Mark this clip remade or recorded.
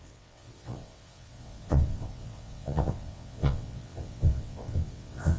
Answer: remade